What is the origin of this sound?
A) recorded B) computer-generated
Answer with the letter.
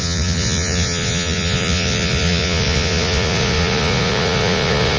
B